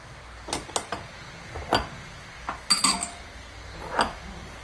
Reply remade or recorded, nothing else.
recorded